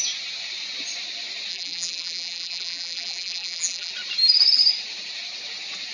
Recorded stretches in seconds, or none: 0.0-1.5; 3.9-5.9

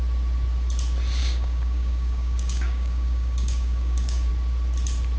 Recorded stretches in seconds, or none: 0.0-1.2; 4.3-5.2

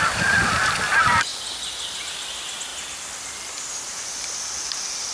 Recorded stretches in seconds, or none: 0.0-2.7; 3.7-5.1

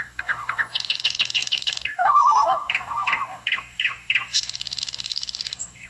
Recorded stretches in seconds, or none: none

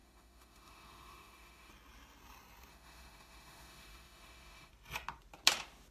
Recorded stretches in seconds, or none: 1.7-2.7; 4.7-5.9

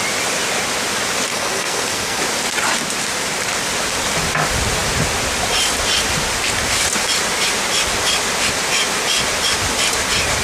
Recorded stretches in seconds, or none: 0.0-1.3; 2.2-10.4

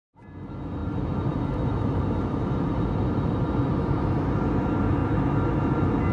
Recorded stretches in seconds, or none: 0.0-0.8; 4.5-6.1

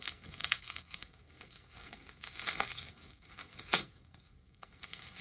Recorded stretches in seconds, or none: none